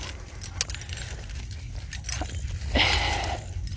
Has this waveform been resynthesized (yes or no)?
no